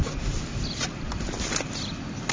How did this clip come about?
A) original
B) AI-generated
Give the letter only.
A